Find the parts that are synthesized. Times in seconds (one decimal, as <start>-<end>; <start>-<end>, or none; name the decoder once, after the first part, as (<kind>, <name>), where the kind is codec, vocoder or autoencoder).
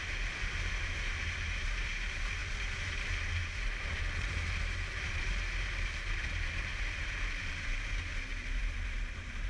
0.0-9.5 (vocoder, BigVGAN v2)